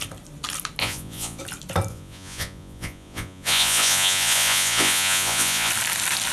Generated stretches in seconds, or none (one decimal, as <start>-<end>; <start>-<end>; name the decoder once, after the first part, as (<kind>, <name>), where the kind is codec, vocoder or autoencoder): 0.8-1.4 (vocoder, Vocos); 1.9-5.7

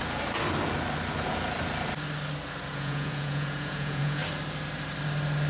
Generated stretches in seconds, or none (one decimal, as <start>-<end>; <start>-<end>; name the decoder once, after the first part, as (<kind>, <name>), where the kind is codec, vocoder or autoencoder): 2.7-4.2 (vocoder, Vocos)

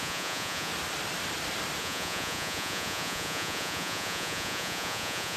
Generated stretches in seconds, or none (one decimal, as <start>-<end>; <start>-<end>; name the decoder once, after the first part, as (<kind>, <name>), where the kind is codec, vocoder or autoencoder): 0.0-0.7 (vocoder, Vocos); 1.8-5.4